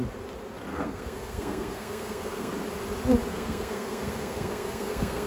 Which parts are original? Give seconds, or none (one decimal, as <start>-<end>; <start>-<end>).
0.0-0.7; 2.5-3.3